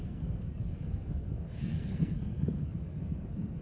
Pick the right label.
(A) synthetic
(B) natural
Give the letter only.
A